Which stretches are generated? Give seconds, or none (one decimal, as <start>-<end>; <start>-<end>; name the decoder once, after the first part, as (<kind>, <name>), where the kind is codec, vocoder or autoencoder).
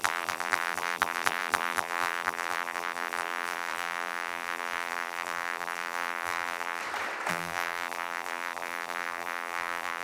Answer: 0.0-6.8 (vocoder, BigVGAN v2); 7.3-10.0